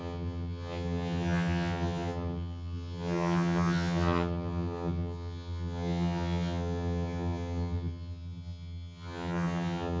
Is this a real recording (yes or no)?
no